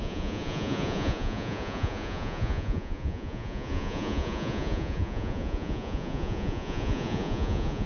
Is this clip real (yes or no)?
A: no